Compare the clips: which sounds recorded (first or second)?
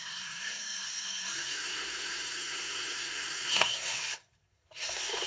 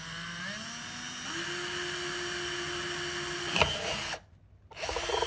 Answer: second